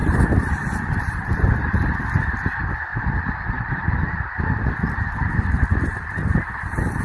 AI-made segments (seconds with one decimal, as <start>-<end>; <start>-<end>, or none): 0.0-2.0